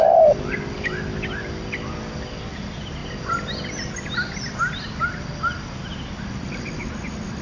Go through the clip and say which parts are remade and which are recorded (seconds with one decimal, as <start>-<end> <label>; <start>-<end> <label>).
0.0-7.4 recorded